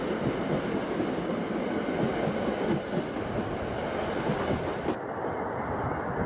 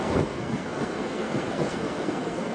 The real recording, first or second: first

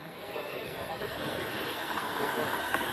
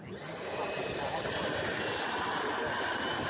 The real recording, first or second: second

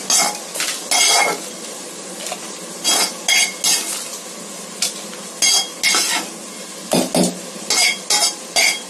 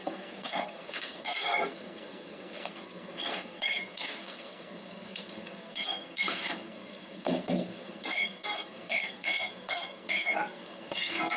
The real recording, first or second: first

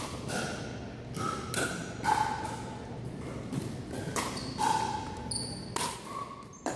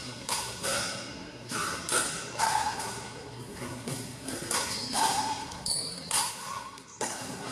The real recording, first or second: first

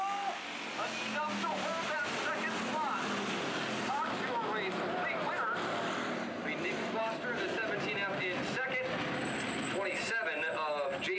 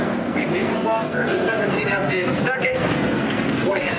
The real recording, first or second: first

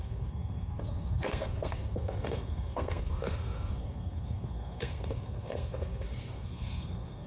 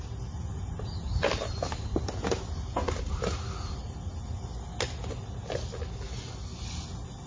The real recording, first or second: second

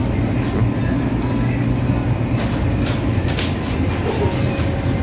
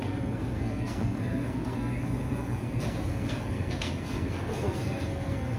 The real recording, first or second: first